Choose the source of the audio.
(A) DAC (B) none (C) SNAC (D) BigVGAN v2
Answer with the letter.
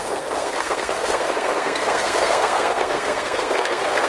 C